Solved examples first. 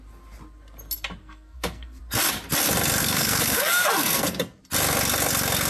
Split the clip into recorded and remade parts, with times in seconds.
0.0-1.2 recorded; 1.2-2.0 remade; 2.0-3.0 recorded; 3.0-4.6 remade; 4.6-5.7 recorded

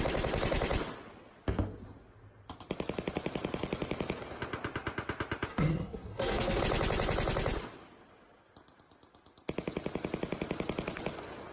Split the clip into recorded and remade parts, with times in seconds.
0.0-5.5 recorded; 5.5-6.6 remade; 6.6-11.5 recorded

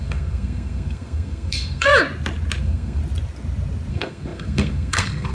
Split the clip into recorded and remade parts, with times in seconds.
0.0-1.9 remade; 1.9-2.6 recorded; 2.6-3.0 remade; 3.0-3.9 recorded; 3.9-5.3 remade